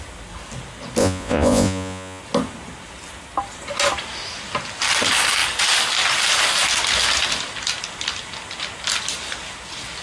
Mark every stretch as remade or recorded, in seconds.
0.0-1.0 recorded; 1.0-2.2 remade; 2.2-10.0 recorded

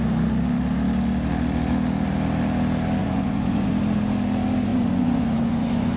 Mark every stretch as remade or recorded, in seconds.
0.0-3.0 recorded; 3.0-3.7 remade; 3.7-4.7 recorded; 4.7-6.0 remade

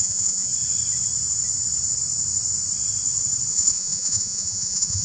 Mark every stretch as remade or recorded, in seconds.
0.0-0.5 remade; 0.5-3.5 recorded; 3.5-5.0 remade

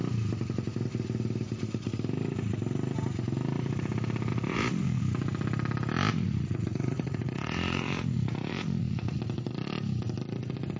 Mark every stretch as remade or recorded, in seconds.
0.0-4.3 recorded; 4.3-5.0 remade; 5.0-6.1 recorded; 6.1-9.2 remade; 9.2-10.8 recorded